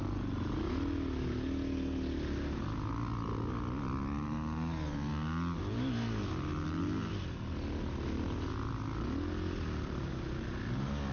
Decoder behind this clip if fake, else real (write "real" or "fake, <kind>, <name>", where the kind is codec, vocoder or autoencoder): real